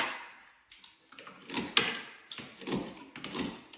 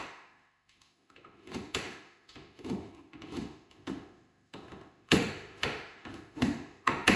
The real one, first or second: first